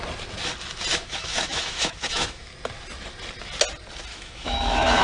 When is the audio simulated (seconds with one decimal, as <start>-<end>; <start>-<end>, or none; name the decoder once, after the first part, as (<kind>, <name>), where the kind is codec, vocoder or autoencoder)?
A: 0.9-2.5 (autoencoder, DAC-VAE); 4.1-5.0

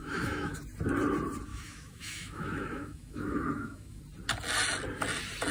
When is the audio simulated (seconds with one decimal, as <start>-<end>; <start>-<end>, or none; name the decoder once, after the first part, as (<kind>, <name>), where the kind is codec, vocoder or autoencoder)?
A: 0.0-0.6 (autoencoder, DAC-VAE); 1.5-4.0

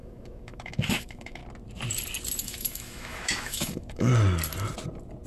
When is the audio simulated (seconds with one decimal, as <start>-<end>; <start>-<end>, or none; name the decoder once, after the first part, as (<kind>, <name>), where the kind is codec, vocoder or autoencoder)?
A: 0.0-1.4 (autoencoder, DAC-VAE); 2.4-4.1

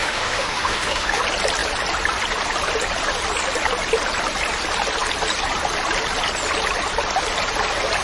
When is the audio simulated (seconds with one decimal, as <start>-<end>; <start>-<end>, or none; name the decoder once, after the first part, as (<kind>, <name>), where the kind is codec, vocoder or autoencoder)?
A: 0.0-1.2 (autoencoder, DAC-VAE)